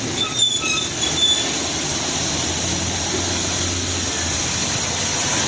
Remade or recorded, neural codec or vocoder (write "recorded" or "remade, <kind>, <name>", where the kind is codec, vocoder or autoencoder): recorded